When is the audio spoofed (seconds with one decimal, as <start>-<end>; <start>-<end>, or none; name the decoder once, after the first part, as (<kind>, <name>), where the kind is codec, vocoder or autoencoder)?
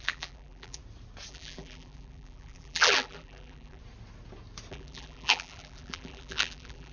0.0-0.8 (vocoder, BigVGAN v2); 1.3-3.8; 4.7-6.9